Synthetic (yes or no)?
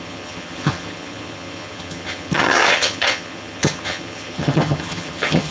yes